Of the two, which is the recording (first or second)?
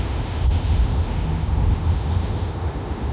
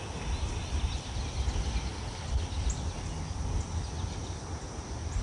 second